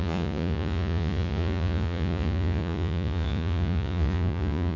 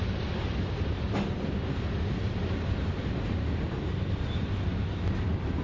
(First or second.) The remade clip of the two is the first